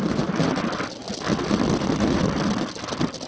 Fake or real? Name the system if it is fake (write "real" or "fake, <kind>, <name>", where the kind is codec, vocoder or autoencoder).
real